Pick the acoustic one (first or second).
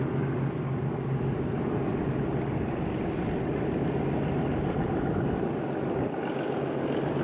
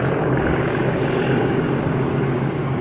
first